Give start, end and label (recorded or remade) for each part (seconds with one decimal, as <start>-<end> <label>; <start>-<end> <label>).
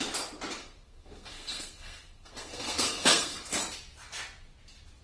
0.0-0.6 recorded; 0.6-3.6 remade; 3.6-5.0 recorded